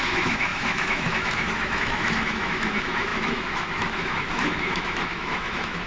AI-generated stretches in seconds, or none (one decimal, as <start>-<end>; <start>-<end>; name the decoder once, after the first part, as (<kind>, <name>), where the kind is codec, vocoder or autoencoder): 0.0-5.9 (autoencoder, DAC-VAE)